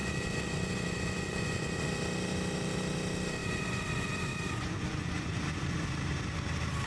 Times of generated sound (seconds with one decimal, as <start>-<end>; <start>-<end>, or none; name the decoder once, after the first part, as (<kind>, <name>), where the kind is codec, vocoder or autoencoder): 0.0-1.9 (vocoder, Vocos); 3.4-5.6